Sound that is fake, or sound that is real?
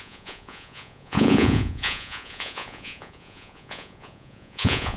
fake